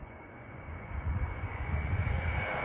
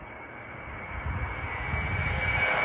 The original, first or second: second